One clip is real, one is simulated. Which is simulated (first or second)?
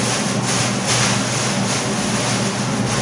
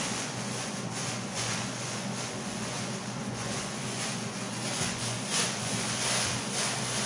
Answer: second